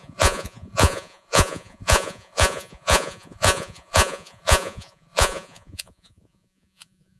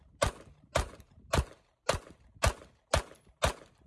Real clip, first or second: second